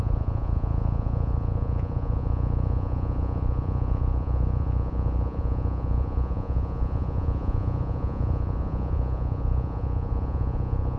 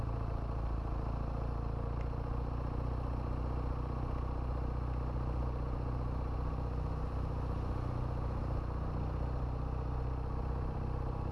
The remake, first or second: first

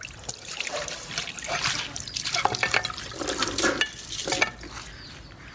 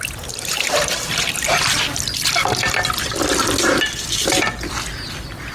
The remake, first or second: second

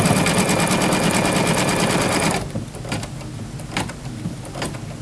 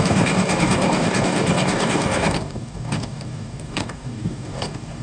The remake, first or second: second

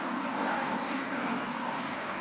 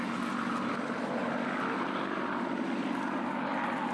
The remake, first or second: first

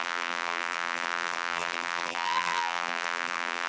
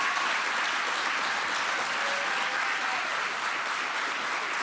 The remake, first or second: first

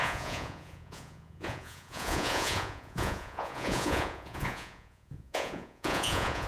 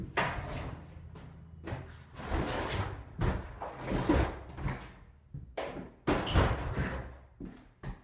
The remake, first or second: first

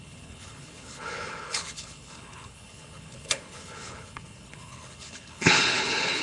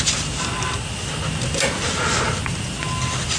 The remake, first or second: first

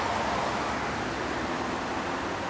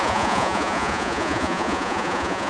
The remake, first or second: second